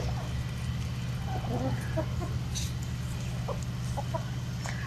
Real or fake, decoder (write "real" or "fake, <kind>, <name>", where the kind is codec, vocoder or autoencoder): real